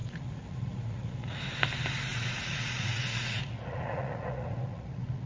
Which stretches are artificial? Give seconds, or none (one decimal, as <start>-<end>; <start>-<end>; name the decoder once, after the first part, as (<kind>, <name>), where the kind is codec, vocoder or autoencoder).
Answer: 0.0-1.4 (vocoder, Vocos); 2.1-5.3